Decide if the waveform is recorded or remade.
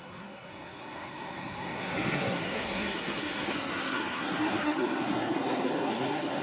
remade